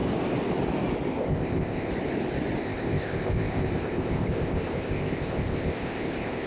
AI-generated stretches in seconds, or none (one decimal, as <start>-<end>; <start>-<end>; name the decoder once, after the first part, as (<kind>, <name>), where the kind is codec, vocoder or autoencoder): 1.1-1.9 (codec, ZipCodec); 2.6-6.5